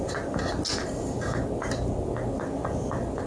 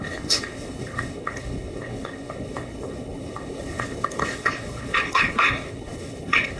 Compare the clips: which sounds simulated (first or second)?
second